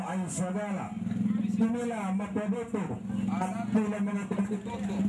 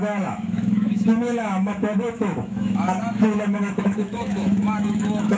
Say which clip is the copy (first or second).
second